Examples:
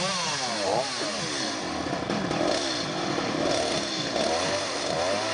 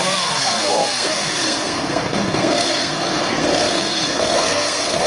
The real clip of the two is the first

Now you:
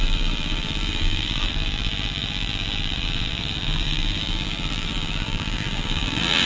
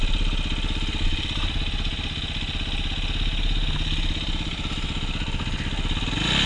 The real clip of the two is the second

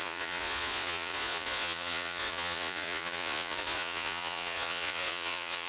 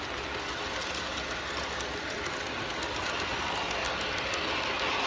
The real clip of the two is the second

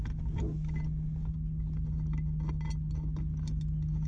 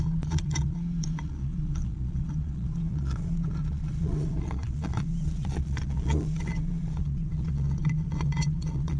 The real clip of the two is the first